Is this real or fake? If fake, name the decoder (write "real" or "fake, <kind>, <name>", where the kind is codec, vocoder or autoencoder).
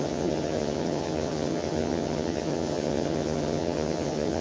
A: fake, vocoder, HiFi-GAN